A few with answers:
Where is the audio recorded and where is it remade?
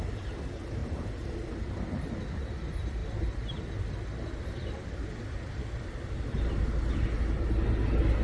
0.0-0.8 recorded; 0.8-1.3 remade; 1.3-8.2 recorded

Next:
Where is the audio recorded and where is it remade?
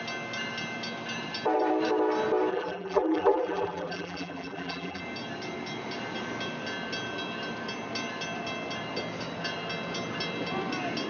0.0-2.5 recorded; 2.5-5.0 remade; 5.0-11.1 recorded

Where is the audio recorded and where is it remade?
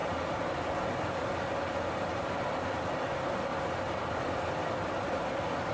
0.0-3.5 recorded; 3.5-4.1 remade; 4.1-5.7 recorded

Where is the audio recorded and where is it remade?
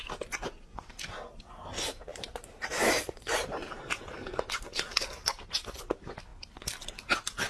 0.0-2.1 recorded; 2.1-4.6 remade; 4.6-6.3 recorded; 6.3-7.0 remade; 7.0-7.5 recorded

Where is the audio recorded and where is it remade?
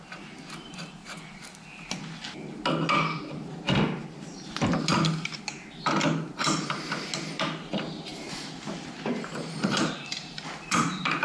0.0-8.1 recorded; 8.1-11.2 remade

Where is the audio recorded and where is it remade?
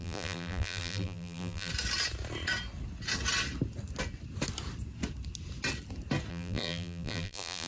0.0-1.7 remade; 1.7-6.3 recorded; 6.3-7.7 remade